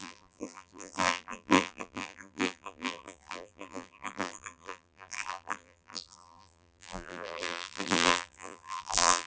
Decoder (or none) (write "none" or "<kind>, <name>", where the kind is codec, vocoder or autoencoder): vocoder, BigVGAN v2